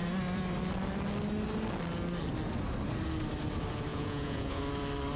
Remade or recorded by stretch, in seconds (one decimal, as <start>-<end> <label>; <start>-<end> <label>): 0.0-3.9 recorded; 3.9-4.6 remade; 4.6-5.2 recorded